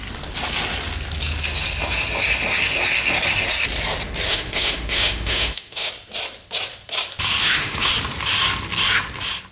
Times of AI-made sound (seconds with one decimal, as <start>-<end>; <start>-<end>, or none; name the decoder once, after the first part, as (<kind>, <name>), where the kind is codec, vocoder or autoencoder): 4.3-5.9 (autoencoder, DAC-VAE); 7.4-7.9